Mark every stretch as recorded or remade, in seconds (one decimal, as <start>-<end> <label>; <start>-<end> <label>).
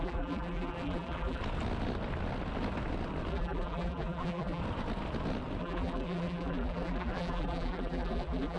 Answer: 0.0-1.4 remade; 1.4-3.3 recorded; 3.3-4.6 remade; 4.6-5.6 recorded; 5.6-8.6 remade